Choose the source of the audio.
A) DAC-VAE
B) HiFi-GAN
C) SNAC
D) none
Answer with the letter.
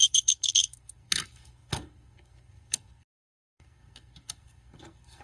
C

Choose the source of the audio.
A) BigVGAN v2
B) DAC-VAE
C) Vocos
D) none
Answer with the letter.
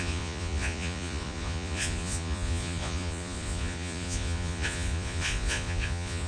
C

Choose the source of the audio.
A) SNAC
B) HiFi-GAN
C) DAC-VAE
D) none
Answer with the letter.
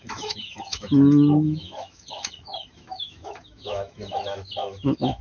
C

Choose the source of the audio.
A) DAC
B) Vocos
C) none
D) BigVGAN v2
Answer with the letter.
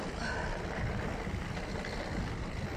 C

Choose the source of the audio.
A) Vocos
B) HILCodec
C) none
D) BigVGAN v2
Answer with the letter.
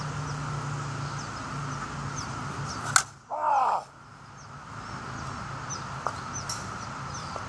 C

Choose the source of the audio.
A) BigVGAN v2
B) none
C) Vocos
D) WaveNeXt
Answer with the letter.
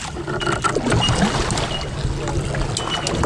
B